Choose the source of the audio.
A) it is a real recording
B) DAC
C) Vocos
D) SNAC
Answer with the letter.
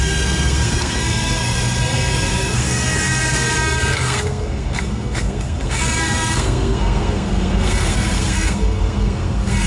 D